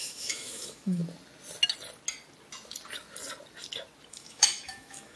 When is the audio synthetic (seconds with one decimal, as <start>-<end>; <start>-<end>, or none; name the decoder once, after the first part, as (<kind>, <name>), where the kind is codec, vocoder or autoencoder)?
0.0-1.0 (autoencoder, DAC-VAE); 4.1-5.2